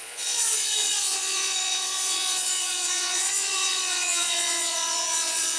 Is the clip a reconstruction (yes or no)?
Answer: yes